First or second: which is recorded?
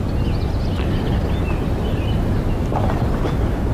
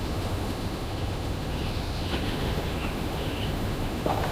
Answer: first